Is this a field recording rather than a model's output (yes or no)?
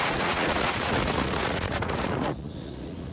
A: no